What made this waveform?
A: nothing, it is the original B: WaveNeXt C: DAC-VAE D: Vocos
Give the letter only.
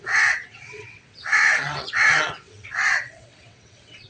B